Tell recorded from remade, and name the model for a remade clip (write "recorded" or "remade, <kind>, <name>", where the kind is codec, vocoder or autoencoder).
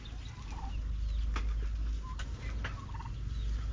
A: recorded